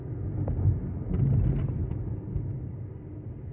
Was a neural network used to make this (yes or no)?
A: no